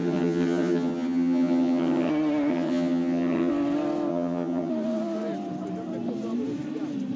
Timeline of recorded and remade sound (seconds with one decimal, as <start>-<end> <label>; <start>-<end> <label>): 0.0-2.1 remade; 2.1-2.5 recorded; 2.5-3.5 remade; 3.5-4.1 recorded; 4.1-4.7 remade; 4.7-7.2 recorded